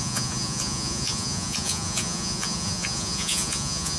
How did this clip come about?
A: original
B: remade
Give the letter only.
B